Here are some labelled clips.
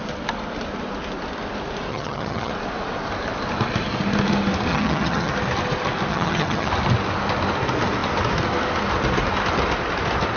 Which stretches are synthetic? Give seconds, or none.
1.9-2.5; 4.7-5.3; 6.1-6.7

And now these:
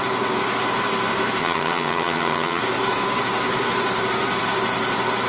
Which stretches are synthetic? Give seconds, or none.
1.4-2.6

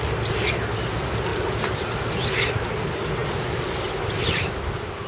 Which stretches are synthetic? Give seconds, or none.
none

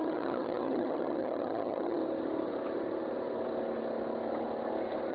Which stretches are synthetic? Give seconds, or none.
0.0-2.0

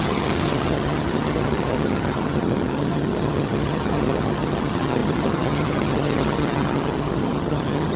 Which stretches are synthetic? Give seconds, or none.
0.0-8.0

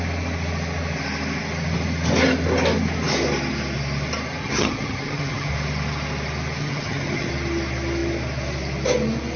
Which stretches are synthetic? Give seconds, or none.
4.4-5.5; 6.6-7.3